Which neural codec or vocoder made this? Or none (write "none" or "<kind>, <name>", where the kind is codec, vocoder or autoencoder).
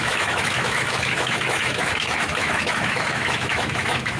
autoencoder, DAC-VAE